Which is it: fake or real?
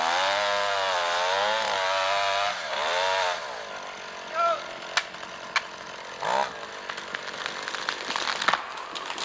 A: real